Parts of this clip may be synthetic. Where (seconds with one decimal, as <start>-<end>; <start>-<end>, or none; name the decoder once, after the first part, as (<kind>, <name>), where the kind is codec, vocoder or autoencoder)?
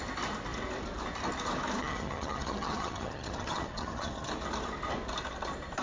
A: 1.8-4.3 (vocoder, HiFi-GAN)